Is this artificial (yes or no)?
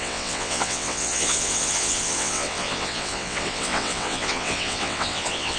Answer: yes